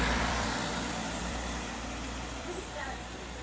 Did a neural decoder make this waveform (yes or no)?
yes